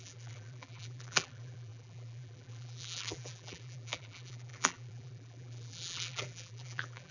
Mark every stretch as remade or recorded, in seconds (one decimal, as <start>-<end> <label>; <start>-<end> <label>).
0.0-7.1 remade

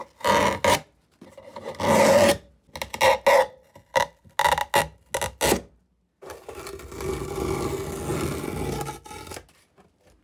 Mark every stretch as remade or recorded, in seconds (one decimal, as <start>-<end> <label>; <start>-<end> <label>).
0.0-10.2 recorded

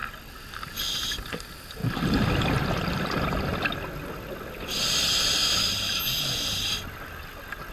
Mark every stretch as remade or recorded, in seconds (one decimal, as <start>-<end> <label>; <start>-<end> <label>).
0.0-0.7 recorded; 0.7-5.4 remade; 5.4-6.7 recorded; 6.7-7.7 remade

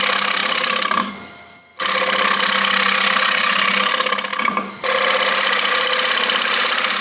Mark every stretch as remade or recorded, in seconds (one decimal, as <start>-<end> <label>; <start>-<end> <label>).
0.0-0.4 recorded; 0.4-1.1 remade; 1.1-7.0 recorded

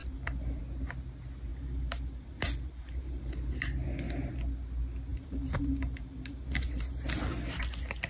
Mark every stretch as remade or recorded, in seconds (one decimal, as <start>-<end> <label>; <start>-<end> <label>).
0.0-0.6 remade; 0.6-1.5 recorded; 1.5-3.3 remade; 3.3-5.1 recorded; 5.1-7.3 remade; 7.3-8.1 recorded

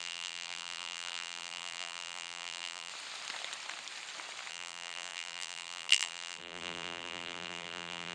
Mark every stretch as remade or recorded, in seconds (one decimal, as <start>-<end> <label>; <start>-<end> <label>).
0.0-2.9 remade; 2.9-4.5 recorded; 4.5-8.1 remade

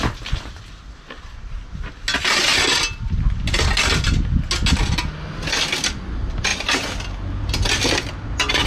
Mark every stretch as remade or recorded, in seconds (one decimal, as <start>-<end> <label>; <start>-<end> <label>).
0.0-8.7 recorded

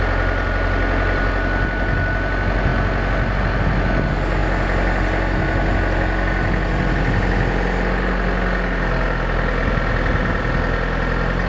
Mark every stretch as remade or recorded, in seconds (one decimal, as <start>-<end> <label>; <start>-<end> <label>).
0.0-11.5 recorded